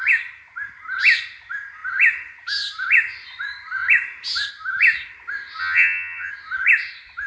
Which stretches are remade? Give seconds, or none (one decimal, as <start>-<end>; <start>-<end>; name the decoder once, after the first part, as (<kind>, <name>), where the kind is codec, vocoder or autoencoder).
5.6-6.3 (vocoder, HiFi-GAN)